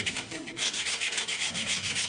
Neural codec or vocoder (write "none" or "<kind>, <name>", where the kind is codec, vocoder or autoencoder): codec, SNAC